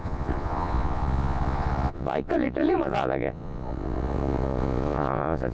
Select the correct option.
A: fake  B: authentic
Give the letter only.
A